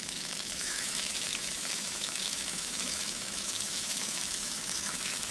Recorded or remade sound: remade